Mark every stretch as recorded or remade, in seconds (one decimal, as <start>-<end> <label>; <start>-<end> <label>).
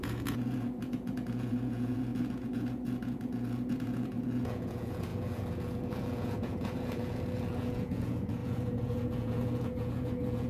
0.0-10.5 remade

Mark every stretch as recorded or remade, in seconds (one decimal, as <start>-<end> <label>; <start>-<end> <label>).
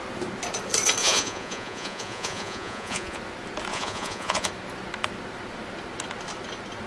0.0-1.0 recorded; 1.0-3.2 remade; 3.2-3.7 recorded; 3.7-4.5 remade; 4.5-6.9 recorded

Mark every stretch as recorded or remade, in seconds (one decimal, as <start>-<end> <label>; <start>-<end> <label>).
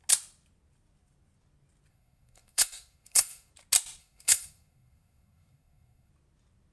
0.0-1.9 recorded; 1.9-3.5 remade; 3.5-4.0 recorded; 4.0-6.1 remade; 6.1-6.7 recorded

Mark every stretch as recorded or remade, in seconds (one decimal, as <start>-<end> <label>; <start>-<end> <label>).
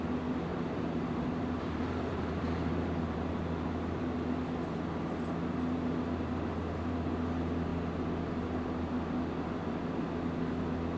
0.0-0.5 recorded; 0.5-4.0 remade; 4.0-11.0 recorded